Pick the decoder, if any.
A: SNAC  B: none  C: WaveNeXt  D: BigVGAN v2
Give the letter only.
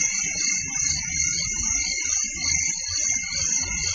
D